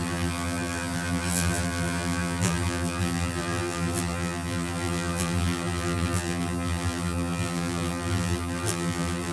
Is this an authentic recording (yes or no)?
no